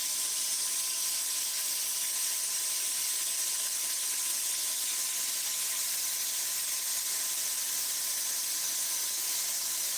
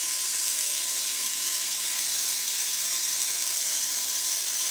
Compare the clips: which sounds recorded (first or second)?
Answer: first